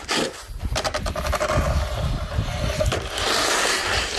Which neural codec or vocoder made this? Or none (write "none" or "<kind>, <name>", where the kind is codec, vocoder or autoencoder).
none